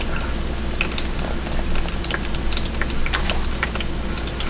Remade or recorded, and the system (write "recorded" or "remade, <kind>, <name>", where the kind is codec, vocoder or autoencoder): recorded